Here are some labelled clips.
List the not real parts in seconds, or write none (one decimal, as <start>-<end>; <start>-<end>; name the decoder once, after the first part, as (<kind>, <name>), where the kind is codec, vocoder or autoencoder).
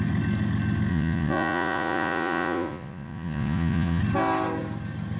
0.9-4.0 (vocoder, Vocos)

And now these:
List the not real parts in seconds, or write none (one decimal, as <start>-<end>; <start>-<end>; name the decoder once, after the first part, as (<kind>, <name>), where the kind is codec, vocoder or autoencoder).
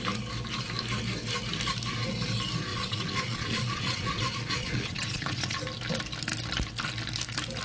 2.7-5.6 (vocoder, Vocos)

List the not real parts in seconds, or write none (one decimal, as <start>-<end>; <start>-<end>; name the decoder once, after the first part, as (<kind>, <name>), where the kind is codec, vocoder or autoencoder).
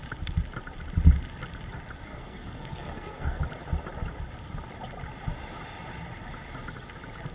2.1-3.4 (codec, SNAC)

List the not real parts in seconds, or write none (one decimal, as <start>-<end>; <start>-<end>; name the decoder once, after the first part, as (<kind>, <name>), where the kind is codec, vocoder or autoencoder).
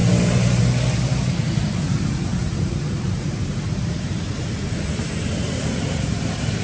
0.0-0.6 (vocoder, BigVGAN v2); 2.3-6.6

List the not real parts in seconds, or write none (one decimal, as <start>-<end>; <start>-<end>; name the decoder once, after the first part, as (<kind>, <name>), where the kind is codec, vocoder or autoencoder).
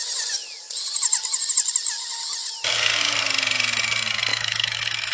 4.3-5.1 (autoencoder, DAC-VAE)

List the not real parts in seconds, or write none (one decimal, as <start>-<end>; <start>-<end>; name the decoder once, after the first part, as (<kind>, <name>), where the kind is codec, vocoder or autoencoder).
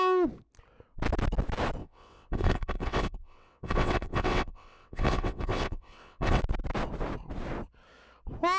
1.8-6.4 (vocoder, WaveNeXt)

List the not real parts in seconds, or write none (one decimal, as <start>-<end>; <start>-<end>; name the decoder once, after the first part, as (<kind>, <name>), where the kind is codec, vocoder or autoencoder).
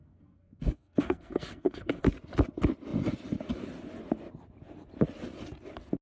0.0-2.0 (codec, SNAC)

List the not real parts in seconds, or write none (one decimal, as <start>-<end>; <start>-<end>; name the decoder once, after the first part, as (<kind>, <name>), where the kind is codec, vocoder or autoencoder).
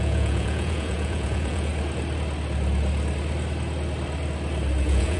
0.0-1.7 (vocoder, Vocos); 4.8-5.2